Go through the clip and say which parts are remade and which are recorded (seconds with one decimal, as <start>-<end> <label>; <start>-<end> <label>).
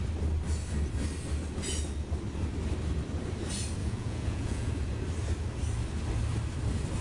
0.0-3.8 recorded; 3.8-4.7 remade; 4.7-7.0 recorded